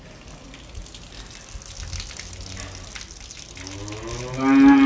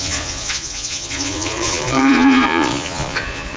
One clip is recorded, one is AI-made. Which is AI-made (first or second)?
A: second